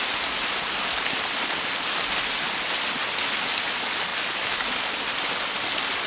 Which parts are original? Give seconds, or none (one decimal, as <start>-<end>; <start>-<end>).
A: 0.0-6.1

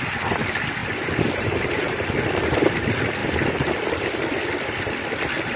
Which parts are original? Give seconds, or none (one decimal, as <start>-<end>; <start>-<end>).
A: 0.0-0.8; 2.0-3.2; 3.7-5.6

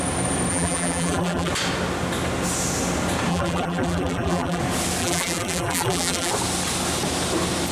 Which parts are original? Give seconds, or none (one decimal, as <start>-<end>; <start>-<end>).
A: 0.0-0.5; 1.5-3.3; 4.6-5.0; 6.3-7.7

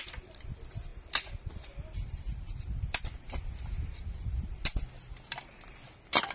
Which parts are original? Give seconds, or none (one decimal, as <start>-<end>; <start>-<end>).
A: none

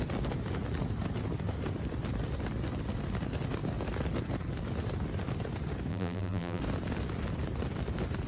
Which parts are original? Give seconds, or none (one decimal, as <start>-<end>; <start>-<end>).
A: 0.0-5.9; 6.6-8.3